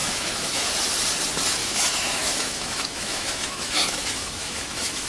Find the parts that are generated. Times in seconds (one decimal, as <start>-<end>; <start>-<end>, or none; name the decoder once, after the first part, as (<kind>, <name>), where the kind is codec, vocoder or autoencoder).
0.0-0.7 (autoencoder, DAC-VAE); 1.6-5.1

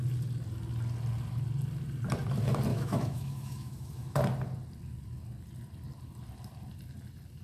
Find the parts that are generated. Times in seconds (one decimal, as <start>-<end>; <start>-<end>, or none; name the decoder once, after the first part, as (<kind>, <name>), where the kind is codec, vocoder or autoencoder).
2.7-4.2 (autoencoder, DAC-VAE)

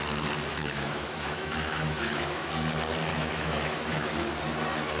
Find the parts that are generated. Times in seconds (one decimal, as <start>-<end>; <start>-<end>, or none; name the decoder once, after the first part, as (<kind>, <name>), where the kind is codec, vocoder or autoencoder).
0.5-2.5 (autoencoder, DAC-VAE); 3.1-4.4

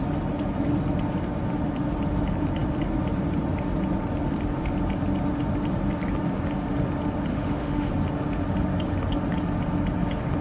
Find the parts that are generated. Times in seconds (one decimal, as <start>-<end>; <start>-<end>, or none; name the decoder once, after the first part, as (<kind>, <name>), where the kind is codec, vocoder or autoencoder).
7.3-7.9 (autoencoder, DAC-VAE)

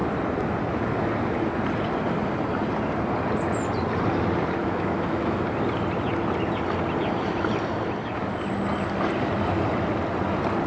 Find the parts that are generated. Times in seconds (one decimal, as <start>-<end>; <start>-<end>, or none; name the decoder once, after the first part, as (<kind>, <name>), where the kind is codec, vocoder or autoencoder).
4.6-5.4 (autoencoder, DAC-VAE)